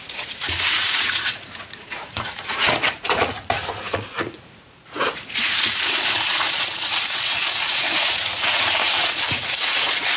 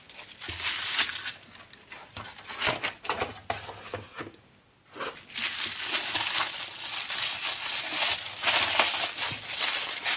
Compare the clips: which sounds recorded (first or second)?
second